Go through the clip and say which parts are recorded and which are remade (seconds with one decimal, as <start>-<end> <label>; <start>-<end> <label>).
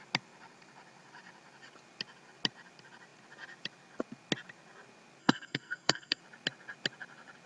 0.0-5.2 recorded; 5.2-6.2 remade; 6.2-7.5 recorded